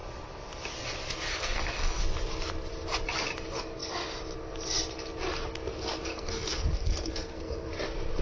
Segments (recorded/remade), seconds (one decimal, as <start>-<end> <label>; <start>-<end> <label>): 0.0-1.3 recorded; 1.3-2.0 remade; 2.0-5.7 recorded; 5.7-7.7 remade; 7.7-8.2 recorded